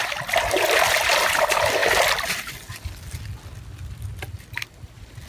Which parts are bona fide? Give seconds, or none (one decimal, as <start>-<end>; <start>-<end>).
0.0-5.3